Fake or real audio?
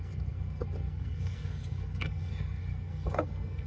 fake